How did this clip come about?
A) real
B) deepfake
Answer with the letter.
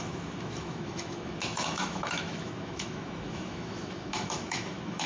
B